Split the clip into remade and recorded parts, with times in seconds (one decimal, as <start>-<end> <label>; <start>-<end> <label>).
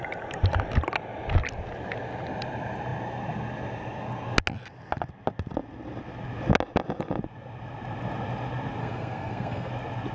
0.0-8.8 recorded; 8.8-9.7 remade; 9.7-10.1 recorded